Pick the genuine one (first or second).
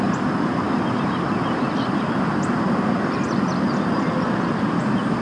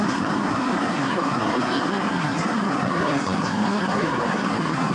first